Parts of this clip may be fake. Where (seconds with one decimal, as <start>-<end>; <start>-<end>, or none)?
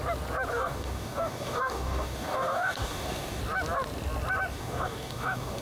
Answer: 0.5-3.4; 4.5-5.6